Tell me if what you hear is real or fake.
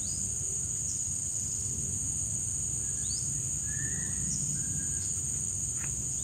real